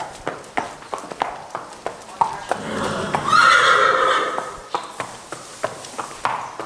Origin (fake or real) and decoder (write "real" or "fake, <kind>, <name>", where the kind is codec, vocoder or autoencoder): real